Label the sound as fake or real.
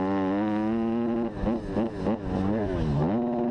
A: real